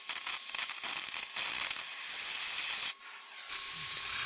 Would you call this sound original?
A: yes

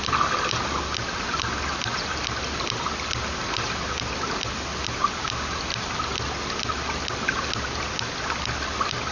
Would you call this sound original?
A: yes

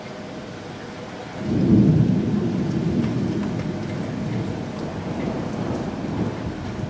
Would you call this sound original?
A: yes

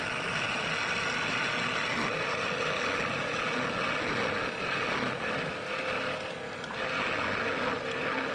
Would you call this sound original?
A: yes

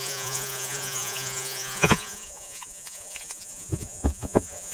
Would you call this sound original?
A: no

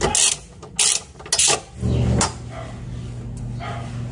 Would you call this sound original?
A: yes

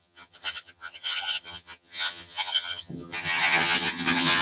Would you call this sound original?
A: no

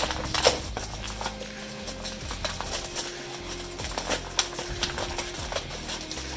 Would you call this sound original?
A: yes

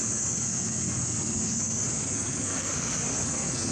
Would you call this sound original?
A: no